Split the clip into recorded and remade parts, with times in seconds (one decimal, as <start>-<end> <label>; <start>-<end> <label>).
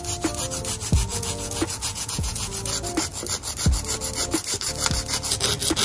0.0-1.1 recorded; 1.1-2.5 remade; 2.5-5.8 recorded